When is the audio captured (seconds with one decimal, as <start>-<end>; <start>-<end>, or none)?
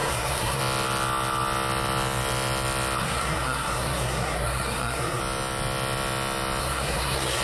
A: 0.6-3.0; 5.2-6.6